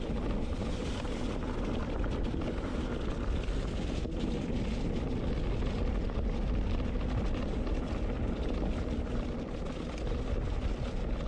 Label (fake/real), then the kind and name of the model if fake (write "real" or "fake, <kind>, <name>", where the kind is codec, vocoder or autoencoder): real